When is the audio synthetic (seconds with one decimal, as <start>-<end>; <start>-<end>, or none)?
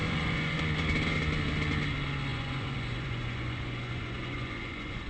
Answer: 0.0-0.6; 2.3-5.1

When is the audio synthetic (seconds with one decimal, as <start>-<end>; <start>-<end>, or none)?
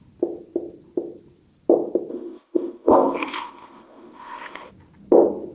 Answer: 2.1-4.7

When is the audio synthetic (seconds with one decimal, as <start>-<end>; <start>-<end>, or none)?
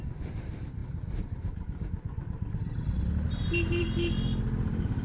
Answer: none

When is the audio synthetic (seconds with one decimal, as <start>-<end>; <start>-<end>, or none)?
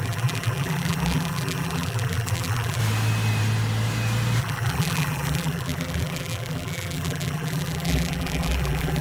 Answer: 0.0-2.8; 4.4-9.0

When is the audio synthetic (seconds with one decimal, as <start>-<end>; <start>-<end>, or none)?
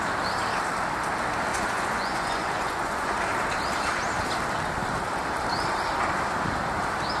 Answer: 1.5-3.1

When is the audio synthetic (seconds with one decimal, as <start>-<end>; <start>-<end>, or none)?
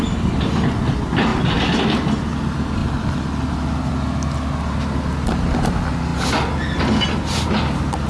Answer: none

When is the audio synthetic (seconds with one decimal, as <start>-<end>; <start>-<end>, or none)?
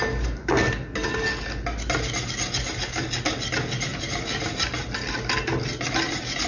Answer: none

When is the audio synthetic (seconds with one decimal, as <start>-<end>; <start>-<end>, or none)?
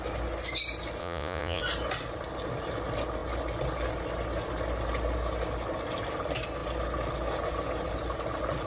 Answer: 1.0-1.6